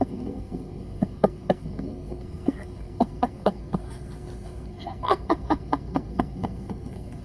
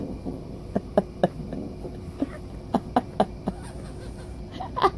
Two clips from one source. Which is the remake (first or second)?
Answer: first